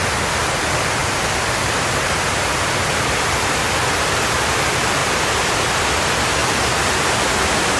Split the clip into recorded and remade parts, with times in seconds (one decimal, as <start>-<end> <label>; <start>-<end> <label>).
0.0-1.0 recorded; 1.0-3.0 remade; 3.0-7.8 recorded